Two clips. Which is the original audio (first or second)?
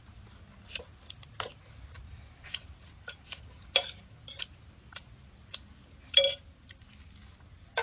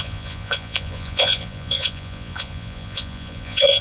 first